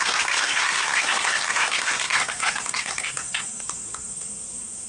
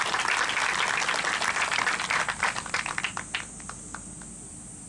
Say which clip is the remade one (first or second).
first